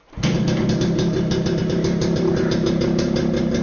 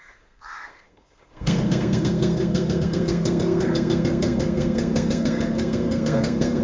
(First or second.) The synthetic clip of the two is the second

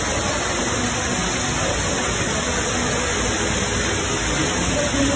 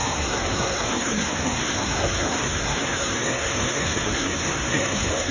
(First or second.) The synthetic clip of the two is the second